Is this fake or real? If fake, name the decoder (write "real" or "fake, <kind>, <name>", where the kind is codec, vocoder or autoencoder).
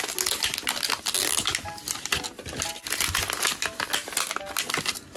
real